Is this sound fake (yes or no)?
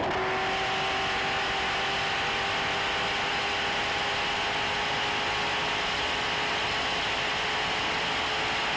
no